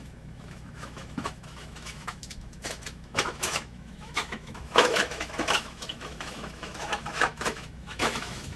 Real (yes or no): no